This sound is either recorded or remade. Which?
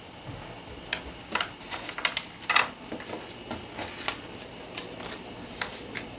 recorded